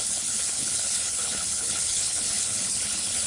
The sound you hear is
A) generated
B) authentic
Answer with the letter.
A